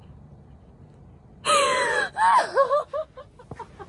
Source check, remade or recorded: recorded